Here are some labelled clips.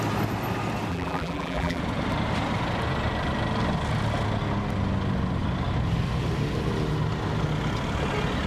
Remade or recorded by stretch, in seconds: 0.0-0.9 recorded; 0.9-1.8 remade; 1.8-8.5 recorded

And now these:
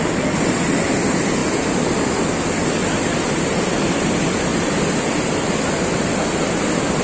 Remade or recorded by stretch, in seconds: 0.0-7.0 recorded